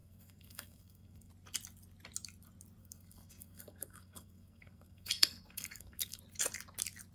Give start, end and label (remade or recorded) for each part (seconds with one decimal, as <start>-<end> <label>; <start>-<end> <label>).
0.0-1.3 remade; 1.3-2.8 recorded; 2.8-6.2 remade; 6.2-7.1 recorded